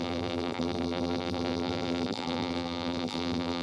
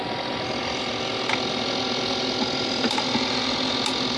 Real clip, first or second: second